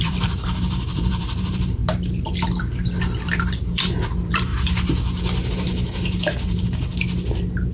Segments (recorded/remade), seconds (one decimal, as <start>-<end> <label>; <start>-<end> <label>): 0.0-1.8 remade; 1.8-3.3 recorded; 3.3-4.5 remade; 4.5-5.5 recorded; 5.5-6.9 remade; 6.9-7.7 recorded

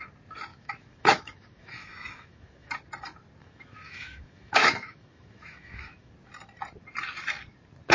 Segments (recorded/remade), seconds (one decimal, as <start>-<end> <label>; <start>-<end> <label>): 0.0-0.5 recorded; 0.5-2.7 remade; 2.7-3.4 recorded; 3.4-6.1 remade; 6.1-7.9 recorded

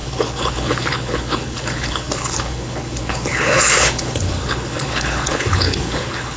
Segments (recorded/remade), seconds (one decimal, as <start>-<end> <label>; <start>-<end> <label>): 0.0-6.4 remade

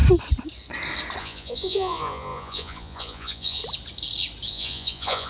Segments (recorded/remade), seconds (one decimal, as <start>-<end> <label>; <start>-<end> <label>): 0.0-1.2 recorded; 1.2-3.6 remade; 3.6-4.5 recorded; 4.5-5.3 remade

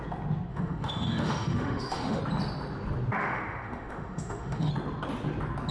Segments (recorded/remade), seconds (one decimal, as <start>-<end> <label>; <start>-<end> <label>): 0.0-0.5 recorded; 0.5-2.2 remade; 2.2-3.2 recorded; 3.2-4.7 remade; 4.7-5.7 recorded

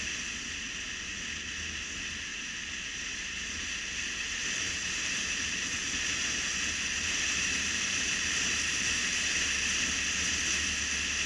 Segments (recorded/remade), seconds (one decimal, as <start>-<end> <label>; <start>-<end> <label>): 0.0-2.3 recorded; 2.3-3.6 remade; 3.6-4.4 recorded; 4.4-9.0 remade; 9.0-11.3 recorded

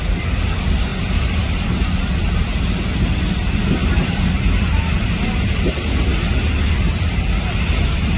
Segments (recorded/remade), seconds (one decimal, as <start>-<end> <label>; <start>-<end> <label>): 0.0-3.8 recorded; 3.8-4.3 remade; 4.3-8.2 recorded

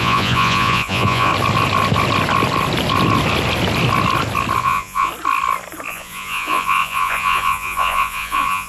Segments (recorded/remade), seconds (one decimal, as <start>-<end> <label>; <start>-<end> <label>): 0.0-1.3 remade; 1.3-4.6 recorded; 4.6-5.1 remade; 5.1-5.9 recorded; 5.9-8.7 remade